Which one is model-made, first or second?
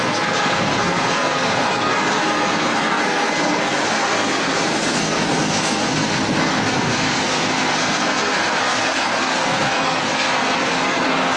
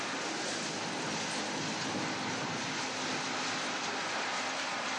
first